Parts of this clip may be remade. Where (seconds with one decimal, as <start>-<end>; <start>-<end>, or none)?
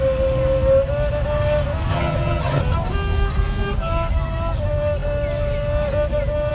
1.9-2.6